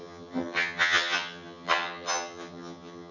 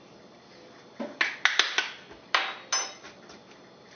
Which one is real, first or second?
second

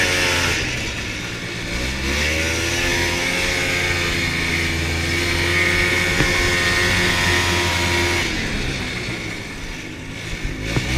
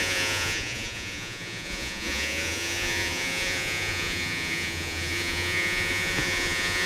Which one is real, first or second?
first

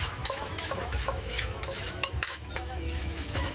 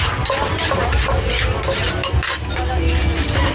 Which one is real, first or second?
second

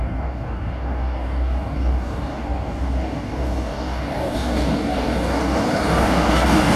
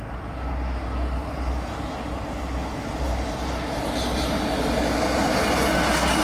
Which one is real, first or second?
second